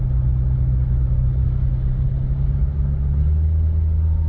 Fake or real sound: real